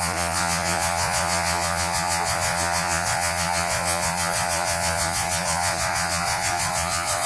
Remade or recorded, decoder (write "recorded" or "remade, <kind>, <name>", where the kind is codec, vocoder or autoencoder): remade, vocoder, Vocos